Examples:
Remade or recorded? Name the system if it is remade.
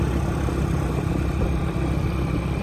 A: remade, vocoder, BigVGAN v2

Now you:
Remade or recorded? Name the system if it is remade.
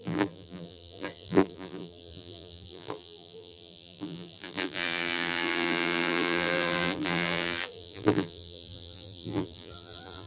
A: remade, vocoder, BigVGAN v2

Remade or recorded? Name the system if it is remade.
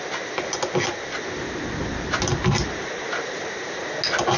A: recorded